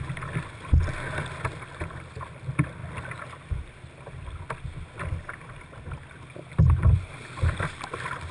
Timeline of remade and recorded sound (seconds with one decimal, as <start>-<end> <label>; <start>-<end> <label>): 0.0-8.3 recorded

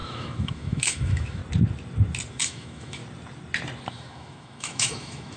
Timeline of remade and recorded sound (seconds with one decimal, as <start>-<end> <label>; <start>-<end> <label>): 0.0-1.4 remade; 1.4-2.3 recorded; 2.3-3.0 remade; 3.0-3.9 recorded; 3.9-5.4 remade

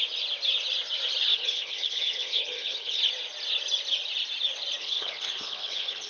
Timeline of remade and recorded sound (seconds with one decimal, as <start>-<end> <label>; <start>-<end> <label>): 0.0-1.3 recorded; 1.3-3.0 remade; 3.0-4.8 recorded; 4.8-6.1 remade